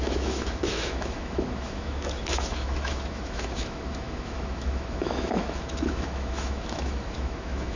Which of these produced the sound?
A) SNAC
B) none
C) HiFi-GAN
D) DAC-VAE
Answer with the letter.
D